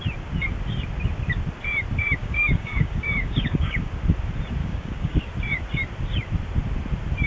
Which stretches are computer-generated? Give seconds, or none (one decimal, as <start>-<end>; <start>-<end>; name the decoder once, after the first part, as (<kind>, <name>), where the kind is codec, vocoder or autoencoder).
2.2-3.8 (codec, DAC); 4.6-5.3